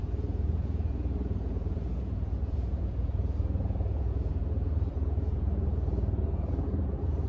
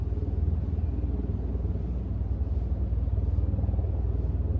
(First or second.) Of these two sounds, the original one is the second